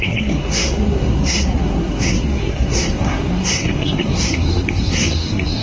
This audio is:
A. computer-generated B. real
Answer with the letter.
A